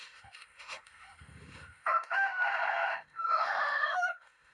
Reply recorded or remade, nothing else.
remade